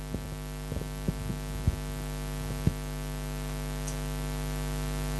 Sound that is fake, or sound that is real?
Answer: real